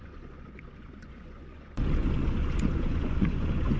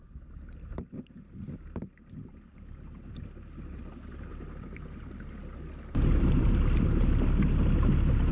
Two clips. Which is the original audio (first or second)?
second